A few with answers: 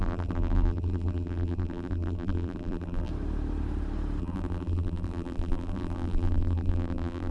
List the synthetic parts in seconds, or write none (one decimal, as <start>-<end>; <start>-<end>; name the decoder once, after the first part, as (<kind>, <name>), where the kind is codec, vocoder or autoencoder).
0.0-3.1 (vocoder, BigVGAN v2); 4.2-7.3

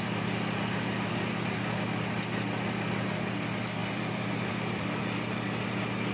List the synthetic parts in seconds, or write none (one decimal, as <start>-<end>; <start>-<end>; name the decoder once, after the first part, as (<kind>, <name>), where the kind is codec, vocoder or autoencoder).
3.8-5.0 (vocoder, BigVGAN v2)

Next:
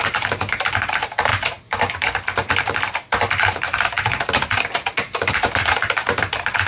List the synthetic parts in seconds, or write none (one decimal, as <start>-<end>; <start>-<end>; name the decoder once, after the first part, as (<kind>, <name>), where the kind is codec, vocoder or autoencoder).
0.0-6.7 (vocoder, BigVGAN v2)

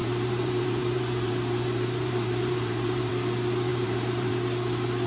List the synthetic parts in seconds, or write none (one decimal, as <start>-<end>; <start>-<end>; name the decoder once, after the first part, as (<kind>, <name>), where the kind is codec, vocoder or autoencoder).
0.0-3.1 (vocoder, BigVGAN v2); 3.7-4.3

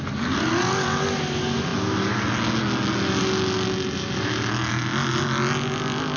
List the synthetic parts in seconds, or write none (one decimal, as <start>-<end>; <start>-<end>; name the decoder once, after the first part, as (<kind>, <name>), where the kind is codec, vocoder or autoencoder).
none

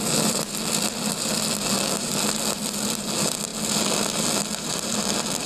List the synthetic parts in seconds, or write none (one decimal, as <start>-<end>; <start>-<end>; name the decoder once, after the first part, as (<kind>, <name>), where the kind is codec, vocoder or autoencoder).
none

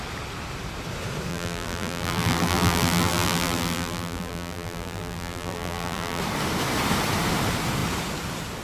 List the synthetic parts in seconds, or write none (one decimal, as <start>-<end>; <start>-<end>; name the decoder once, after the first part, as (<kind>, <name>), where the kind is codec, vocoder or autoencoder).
1.3-6.2 (vocoder, BigVGAN v2)

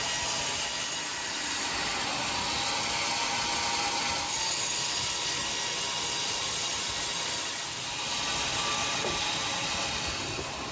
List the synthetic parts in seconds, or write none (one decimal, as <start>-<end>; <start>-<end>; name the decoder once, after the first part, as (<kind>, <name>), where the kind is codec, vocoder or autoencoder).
none